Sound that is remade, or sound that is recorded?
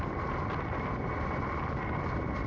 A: recorded